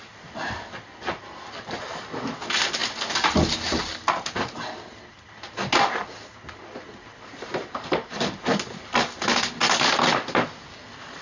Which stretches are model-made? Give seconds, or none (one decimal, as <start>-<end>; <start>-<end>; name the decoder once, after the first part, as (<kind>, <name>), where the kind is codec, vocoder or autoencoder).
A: none